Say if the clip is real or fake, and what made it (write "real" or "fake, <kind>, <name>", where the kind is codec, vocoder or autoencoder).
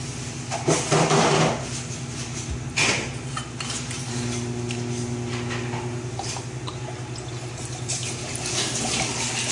fake, vocoder, BigVGAN v2